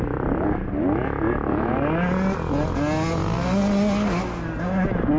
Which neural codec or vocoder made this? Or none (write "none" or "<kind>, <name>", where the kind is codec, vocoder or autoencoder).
none